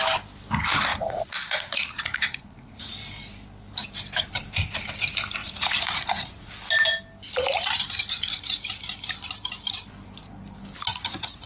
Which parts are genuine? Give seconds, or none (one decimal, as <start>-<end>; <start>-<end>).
0.0-0.9; 2.9-5.4; 6.5-10.9